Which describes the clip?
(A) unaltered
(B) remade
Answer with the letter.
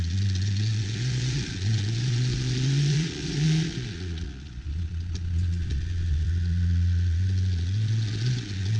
B